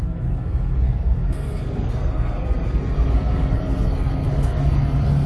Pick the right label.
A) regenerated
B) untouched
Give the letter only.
A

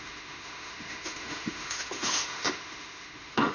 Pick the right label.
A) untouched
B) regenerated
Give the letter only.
B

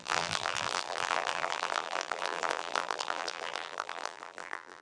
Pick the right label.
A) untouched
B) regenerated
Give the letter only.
B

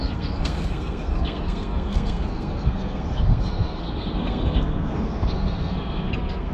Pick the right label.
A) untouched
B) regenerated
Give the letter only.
B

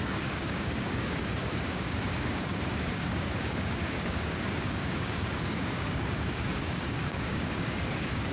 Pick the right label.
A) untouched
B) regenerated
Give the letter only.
B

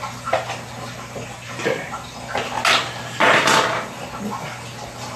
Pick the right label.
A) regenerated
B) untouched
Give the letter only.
B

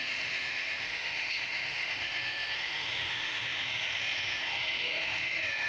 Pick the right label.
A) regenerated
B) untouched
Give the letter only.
A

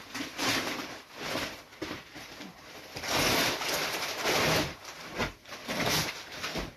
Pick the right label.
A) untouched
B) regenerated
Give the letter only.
B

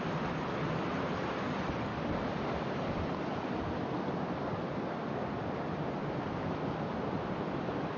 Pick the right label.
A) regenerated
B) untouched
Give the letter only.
B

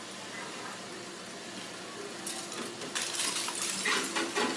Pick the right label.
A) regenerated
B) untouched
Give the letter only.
B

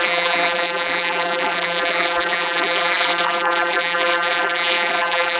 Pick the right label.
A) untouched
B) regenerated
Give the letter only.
B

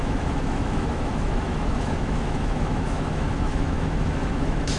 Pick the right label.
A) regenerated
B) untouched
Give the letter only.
A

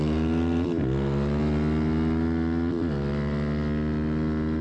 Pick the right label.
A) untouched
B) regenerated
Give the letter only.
A